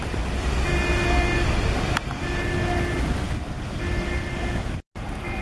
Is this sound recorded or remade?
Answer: recorded